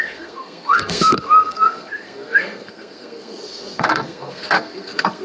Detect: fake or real fake